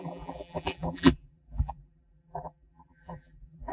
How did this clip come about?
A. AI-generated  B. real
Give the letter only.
A